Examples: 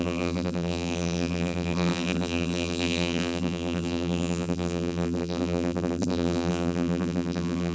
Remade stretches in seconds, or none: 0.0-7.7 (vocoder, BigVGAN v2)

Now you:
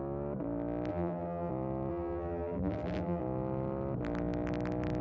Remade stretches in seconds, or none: 0.9-1.5 (vocoder, BigVGAN v2); 1.9-3.2

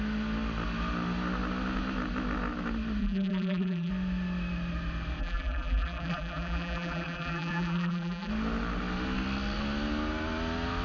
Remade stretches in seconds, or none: 3.0-3.9 (vocoder, BigVGAN v2); 5.2-8.3